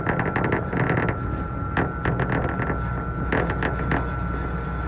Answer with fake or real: real